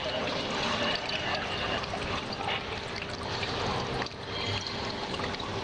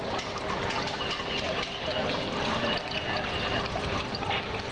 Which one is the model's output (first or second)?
first